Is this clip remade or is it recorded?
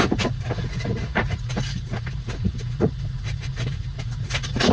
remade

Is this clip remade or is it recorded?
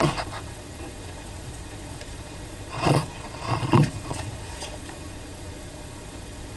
remade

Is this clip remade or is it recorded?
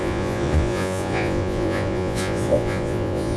remade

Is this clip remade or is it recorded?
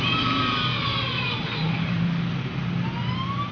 recorded